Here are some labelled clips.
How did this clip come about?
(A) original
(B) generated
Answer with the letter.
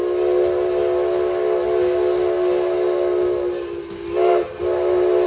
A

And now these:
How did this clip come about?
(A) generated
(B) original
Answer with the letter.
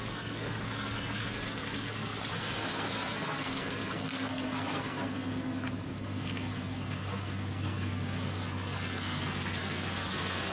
A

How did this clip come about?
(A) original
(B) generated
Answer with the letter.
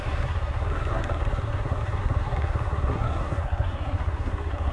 B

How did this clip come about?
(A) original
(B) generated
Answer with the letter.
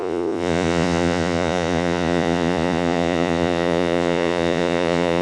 B